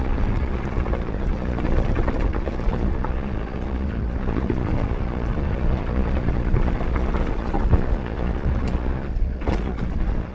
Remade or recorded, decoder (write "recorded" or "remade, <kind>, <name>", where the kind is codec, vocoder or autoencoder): remade, vocoder, Vocos